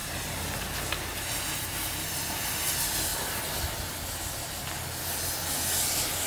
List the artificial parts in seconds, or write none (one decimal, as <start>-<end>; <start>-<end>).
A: none